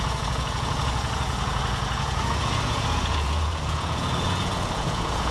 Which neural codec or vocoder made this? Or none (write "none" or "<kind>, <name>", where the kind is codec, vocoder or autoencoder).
vocoder, Vocos